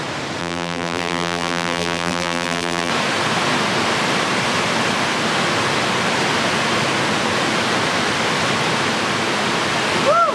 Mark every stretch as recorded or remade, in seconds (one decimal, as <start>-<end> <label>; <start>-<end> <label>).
0.0-0.4 recorded; 0.4-2.9 remade; 2.9-10.3 recorded